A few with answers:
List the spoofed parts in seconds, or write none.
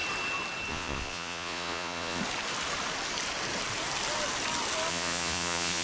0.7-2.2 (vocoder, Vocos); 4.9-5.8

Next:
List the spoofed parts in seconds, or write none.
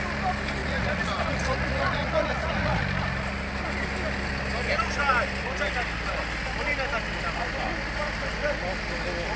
0.6-2.8 (vocoder, Vocos)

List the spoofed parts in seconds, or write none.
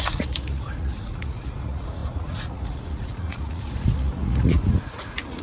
0.0-5.4 (vocoder, Vocos)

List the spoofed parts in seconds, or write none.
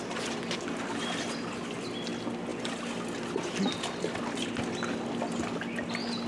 none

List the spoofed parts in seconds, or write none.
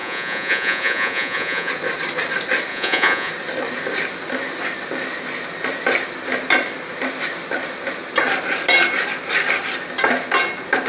0.0-1.7 (vocoder, Vocos); 2.7-3.3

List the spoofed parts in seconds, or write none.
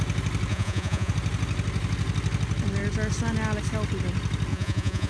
0.5-1.1 (vocoder, Vocos); 4.5-5.1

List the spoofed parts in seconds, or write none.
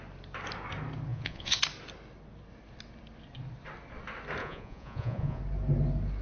1.1-1.6 (vocoder, Vocos); 4.4-5.4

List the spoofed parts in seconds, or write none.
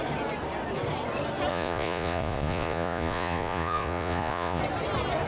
1.5-4.6 (vocoder, Vocos)